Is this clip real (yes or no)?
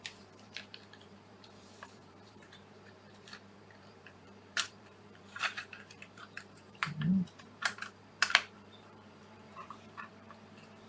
no